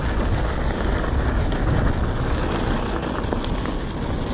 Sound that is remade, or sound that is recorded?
recorded